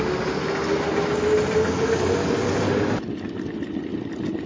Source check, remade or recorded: recorded